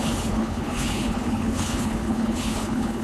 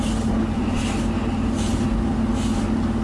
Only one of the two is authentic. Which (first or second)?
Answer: second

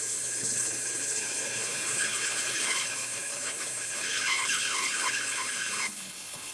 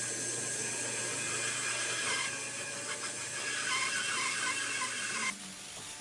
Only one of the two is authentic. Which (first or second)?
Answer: second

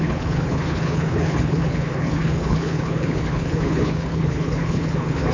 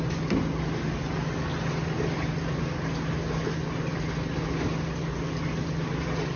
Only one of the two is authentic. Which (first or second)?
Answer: second